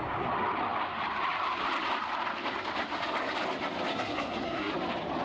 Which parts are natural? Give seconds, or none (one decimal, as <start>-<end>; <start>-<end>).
0.0-3.9; 4.7-5.2